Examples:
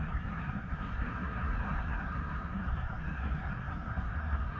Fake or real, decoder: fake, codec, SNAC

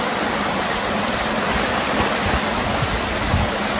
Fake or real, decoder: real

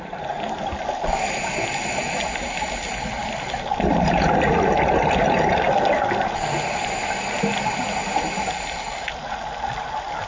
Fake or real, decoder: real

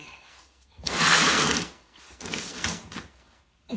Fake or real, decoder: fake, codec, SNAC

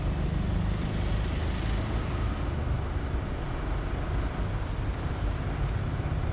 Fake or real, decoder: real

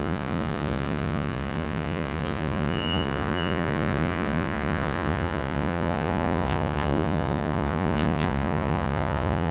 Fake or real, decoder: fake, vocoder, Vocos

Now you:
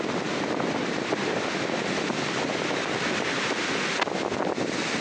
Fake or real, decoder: real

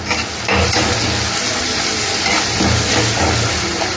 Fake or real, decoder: real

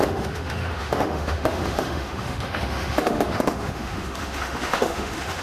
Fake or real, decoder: fake, autoencoder, DAC-VAE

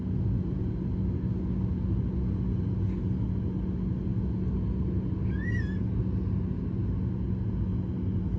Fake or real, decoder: real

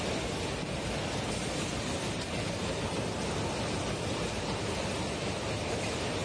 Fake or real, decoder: real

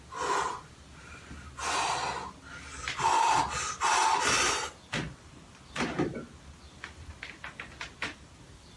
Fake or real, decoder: real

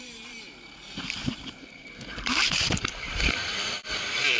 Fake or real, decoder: fake, vocoder, BigVGAN v2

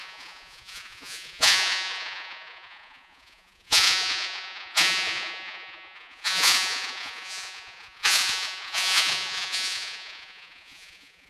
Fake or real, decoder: fake, vocoder, Vocos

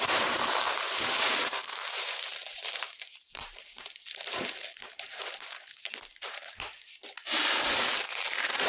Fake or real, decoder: fake, vocoder, BigVGAN v2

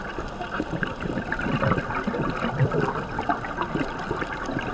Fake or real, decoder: real